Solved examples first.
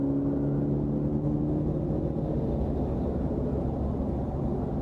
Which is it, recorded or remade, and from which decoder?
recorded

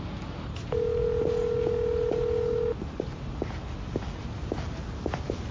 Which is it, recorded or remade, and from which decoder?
recorded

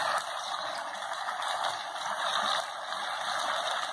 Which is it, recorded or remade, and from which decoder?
recorded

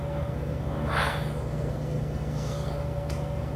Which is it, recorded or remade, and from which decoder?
remade, codec, SNAC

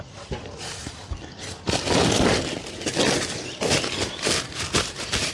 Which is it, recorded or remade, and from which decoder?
recorded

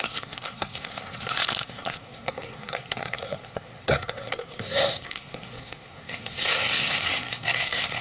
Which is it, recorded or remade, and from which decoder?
remade, codec, SNAC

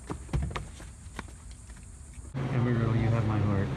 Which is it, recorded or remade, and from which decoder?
recorded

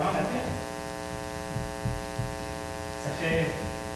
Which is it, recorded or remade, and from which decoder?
recorded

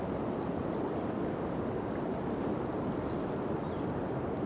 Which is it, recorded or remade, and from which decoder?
recorded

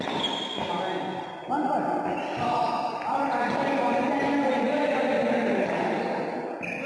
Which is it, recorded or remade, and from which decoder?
recorded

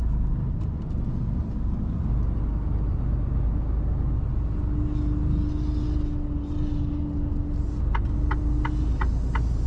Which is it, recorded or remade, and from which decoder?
recorded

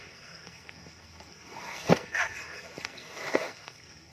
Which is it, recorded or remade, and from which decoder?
remade, codec, SNAC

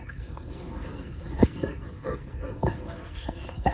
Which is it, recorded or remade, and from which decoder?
remade, codec, SNAC